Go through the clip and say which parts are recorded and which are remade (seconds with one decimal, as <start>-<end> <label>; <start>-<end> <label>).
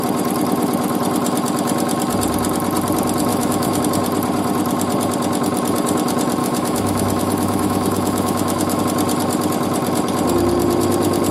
0.0-3.3 recorded; 3.3-3.8 remade; 3.8-6.4 recorded; 6.4-8.8 remade; 8.8-11.3 recorded